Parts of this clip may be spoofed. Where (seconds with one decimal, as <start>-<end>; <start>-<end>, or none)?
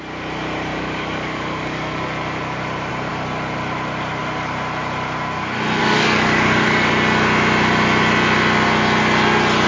0.7-2.0; 5.8-6.9